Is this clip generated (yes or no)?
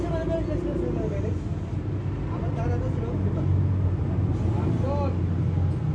no